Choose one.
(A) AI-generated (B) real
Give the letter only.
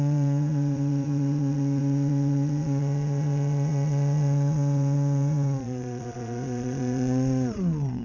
A